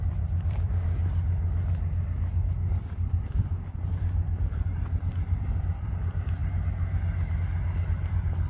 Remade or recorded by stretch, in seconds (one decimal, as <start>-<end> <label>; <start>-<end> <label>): 0.0-1.0 remade; 1.0-2.3 recorded; 2.3-6.4 remade; 6.4-7.3 recorded; 7.3-8.5 remade